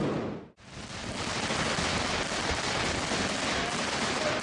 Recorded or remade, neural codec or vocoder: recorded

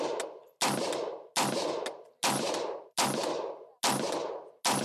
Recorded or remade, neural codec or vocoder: recorded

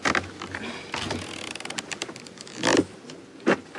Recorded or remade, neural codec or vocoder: recorded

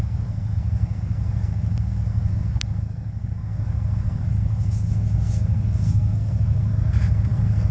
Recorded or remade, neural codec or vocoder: remade, codec, SNAC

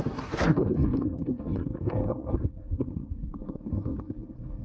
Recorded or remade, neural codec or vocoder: remade, codec, SNAC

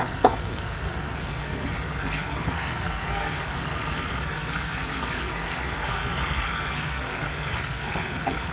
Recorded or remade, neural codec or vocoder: remade, codec, SNAC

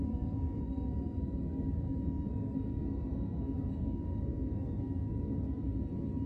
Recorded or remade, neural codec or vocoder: remade, codec, SNAC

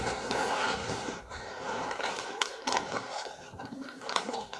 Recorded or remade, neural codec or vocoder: remade, codec, SNAC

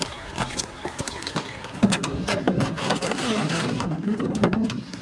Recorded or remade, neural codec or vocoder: remade, codec, SNAC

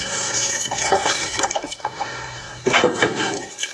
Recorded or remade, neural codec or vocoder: remade, codec, SNAC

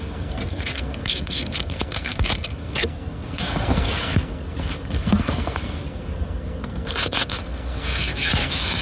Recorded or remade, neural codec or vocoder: remade, codec, SNAC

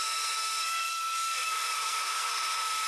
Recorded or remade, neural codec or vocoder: remade, codec, SNAC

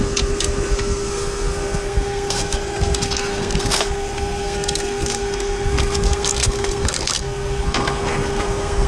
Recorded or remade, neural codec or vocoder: remade, codec, SNAC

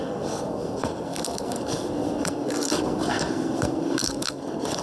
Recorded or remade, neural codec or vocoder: remade, codec, SNAC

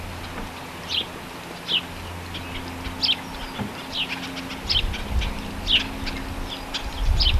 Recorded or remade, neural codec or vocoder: recorded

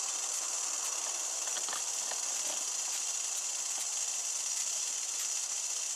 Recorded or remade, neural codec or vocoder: recorded